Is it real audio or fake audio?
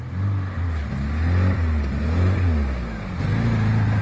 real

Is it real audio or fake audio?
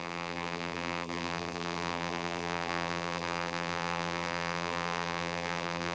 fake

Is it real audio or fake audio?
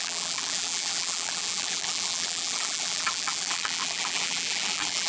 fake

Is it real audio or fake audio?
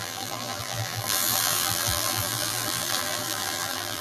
fake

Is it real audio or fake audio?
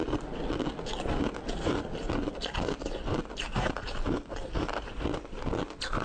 real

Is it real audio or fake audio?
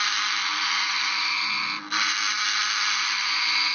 real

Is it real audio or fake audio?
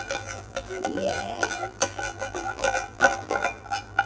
fake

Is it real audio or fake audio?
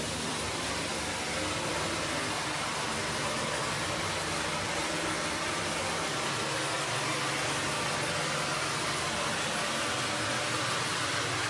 real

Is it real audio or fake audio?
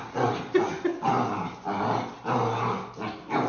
real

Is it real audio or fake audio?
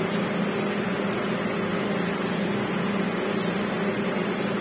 real